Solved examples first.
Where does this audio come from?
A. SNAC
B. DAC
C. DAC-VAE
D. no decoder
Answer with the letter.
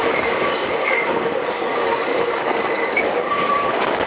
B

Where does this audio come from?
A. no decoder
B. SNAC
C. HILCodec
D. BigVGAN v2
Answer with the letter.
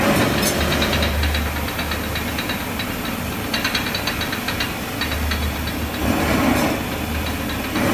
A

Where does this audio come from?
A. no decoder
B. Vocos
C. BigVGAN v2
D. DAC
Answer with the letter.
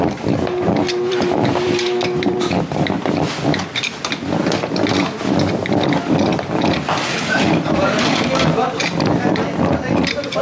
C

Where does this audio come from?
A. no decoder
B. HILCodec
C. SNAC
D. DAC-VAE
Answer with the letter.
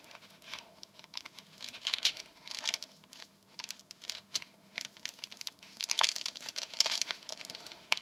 D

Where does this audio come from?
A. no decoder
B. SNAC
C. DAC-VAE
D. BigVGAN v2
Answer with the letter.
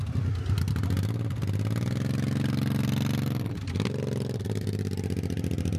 A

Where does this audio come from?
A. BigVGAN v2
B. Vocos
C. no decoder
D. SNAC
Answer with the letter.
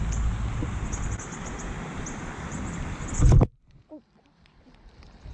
A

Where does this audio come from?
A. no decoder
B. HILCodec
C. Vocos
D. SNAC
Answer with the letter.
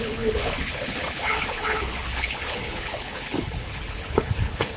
B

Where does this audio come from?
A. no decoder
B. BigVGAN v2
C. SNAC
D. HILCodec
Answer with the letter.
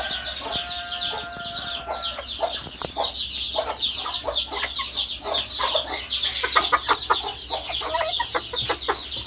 A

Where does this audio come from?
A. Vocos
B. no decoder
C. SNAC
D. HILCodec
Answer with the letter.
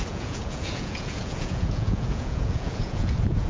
A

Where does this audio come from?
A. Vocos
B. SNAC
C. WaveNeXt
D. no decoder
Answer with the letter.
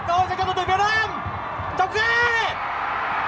D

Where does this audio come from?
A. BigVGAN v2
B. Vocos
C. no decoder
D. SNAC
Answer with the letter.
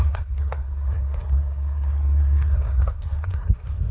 D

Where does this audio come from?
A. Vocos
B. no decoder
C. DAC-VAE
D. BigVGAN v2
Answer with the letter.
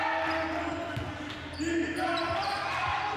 B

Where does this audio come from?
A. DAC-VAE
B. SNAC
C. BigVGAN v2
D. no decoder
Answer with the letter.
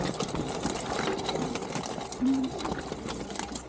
C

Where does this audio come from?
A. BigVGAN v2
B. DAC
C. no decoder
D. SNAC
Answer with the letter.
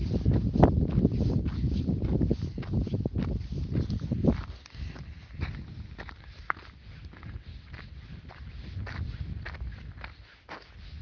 C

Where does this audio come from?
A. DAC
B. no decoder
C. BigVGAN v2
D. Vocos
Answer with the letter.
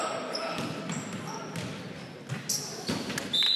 B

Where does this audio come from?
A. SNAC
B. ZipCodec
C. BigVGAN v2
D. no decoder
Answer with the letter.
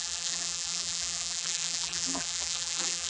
C